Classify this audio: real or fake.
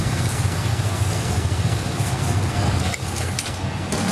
fake